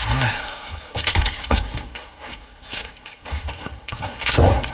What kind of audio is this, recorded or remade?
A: remade